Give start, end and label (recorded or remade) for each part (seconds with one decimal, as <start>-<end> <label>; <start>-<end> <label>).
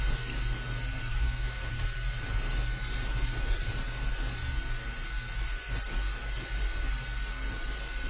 0.0-1.1 recorded; 1.1-1.7 remade; 1.7-8.1 recorded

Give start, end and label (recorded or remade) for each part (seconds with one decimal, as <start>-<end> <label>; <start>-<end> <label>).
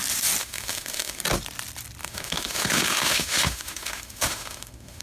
0.0-0.4 recorded; 0.4-1.2 remade; 1.2-2.0 recorded; 2.0-5.0 remade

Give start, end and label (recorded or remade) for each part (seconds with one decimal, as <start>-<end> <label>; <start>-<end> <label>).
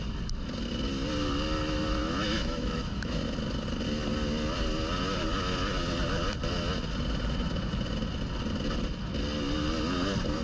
0.0-2.0 recorded; 2.0-3.2 remade; 3.2-10.4 recorded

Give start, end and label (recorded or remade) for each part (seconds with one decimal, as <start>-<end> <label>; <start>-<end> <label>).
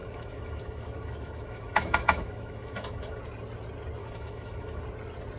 0.0-3.2 remade; 3.2-4.0 recorded; 4.0-4.8 remade; 4.8-5.4 recorded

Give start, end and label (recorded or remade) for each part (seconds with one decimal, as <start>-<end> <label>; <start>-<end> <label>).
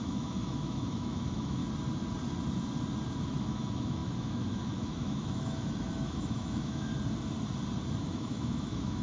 0.0-1.6 remade; 1.6-3.4 recorded; 3.4-6.9 remade; 6.9-8.0 recorded; 8.0-9.0 remade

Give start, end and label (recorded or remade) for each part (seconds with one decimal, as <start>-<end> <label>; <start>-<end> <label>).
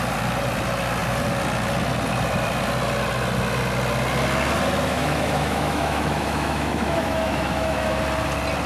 0.0-4.9 recorded; 4.9-8.0 remade; 8.0-8.7 recorded